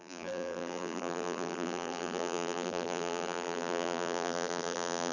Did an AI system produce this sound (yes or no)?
yes